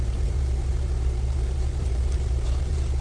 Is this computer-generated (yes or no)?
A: yes